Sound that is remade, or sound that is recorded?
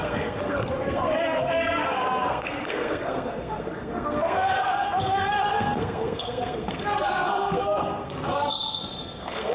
remade